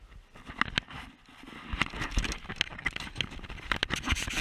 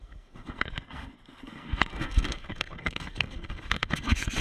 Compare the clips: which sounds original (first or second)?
first